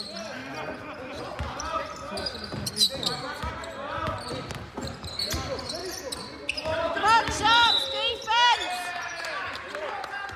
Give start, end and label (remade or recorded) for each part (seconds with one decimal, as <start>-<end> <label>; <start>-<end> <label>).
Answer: 0.0-10.4 recorded